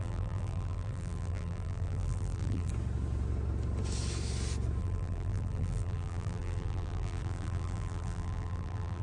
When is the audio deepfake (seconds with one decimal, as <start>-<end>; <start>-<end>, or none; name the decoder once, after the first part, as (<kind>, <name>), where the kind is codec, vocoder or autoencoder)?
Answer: 0.0-2.7 (vocoder, BigVGAN v2); 4.8-9.0